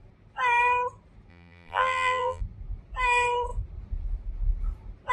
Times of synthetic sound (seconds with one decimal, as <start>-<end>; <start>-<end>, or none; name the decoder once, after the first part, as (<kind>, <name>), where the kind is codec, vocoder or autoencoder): 1.3-2.4 (vocoder, BigVGAN v2)